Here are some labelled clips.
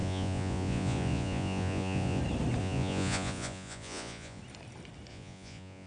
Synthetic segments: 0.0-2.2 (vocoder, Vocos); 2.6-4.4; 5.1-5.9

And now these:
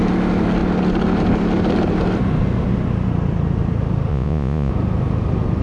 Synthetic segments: 4.1-4.7 (vocoder, Vocos)